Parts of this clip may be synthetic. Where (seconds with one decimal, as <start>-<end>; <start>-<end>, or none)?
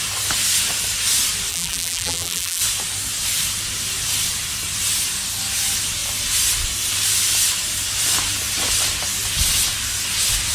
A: 1.5-2.6